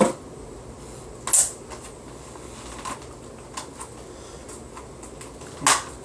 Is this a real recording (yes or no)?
yes